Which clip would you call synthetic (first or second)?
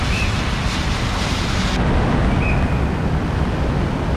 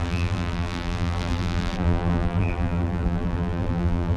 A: second